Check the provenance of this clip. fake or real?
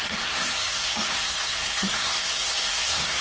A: fake